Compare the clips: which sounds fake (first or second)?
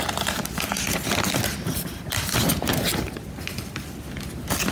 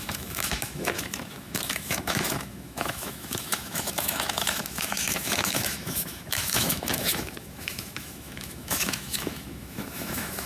second